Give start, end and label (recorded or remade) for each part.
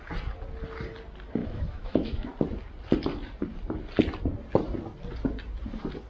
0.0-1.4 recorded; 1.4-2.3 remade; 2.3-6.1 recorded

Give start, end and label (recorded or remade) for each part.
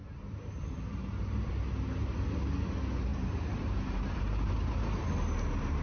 0.0-1.5 remade; 1.5-3.1 recorded; 3.1-4.5 remade; 4.5-5.8 recorded